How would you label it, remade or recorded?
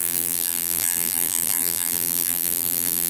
remade